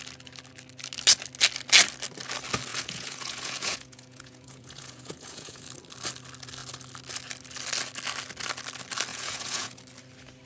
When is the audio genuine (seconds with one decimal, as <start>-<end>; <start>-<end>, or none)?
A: 0.0-2.7; 5.6-9.1; 9.8-10.5